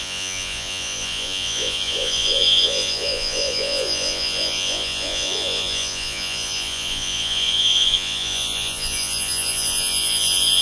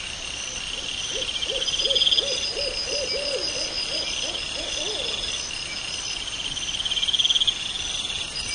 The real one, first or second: second